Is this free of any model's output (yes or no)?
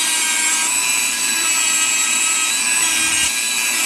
yes